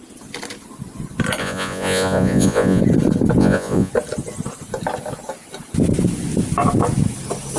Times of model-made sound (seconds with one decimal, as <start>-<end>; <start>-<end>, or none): 1.4-2.8; 3.4-3.9

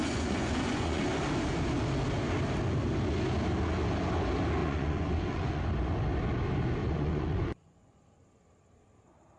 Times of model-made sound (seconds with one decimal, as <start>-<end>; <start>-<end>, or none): 0.0-1.0; 4.6-5.6; 6.8-8.0

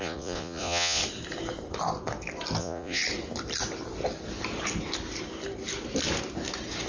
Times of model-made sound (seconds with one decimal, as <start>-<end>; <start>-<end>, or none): 0.0-1.0; 2.6-3.0